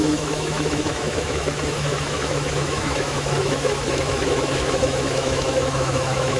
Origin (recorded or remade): remade